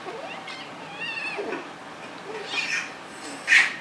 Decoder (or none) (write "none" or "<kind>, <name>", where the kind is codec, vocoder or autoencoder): none